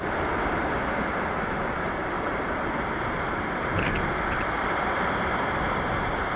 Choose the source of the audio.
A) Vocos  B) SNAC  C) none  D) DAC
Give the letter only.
C